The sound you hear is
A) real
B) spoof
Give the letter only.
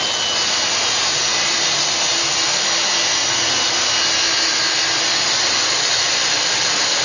A